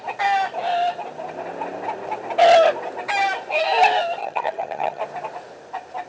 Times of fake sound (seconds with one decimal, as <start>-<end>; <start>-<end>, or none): 4.2-5.0